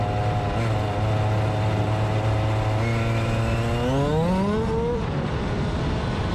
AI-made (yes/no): no